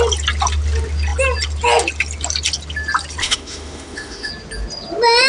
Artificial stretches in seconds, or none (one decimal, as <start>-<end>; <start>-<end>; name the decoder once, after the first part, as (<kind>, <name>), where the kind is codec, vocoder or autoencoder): 3.2-4.3 (autoencoder, DAC-VAE)